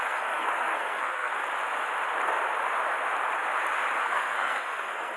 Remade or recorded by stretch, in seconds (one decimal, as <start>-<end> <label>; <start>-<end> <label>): 0.0-1.4 remade; 1.4-4.0 recorded; 4.0-5.2 remade